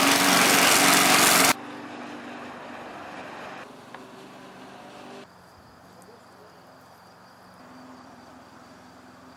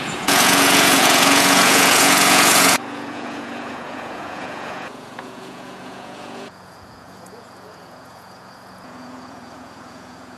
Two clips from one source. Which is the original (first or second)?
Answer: first